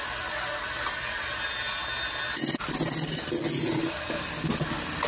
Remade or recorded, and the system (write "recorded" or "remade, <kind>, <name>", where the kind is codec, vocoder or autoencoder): recorded